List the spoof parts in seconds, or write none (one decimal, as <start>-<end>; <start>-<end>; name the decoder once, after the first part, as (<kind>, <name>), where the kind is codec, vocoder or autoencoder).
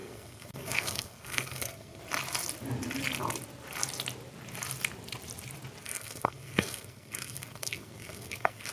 0.0-2.0 (codec, SNAC); 5.8-8.7